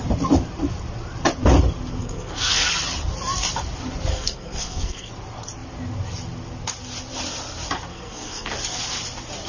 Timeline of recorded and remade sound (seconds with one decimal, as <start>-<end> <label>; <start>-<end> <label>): 0.0-2.0 recorded; 2.0-2.7 remade; 2.7-4.1 recorded; 4.1-5.1 remade; 5.1-7.9 recorded; 7.9-8.5 remade; 8.5-9.5 recorded